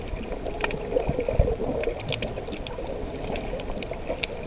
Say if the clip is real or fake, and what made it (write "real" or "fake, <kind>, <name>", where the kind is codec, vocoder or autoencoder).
real